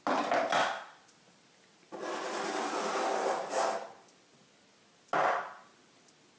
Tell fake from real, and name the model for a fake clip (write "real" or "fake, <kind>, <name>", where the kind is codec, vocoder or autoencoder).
real